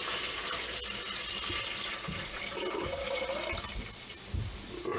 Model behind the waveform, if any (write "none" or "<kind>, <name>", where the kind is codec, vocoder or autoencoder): none